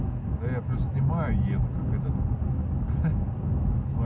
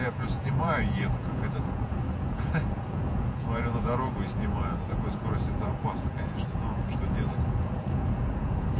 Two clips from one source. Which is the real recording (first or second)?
first